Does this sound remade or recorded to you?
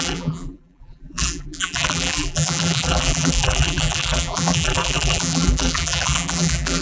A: remade